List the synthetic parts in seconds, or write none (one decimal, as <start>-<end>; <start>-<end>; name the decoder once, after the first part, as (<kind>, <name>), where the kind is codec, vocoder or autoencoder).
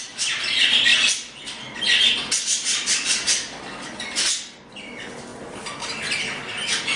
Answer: none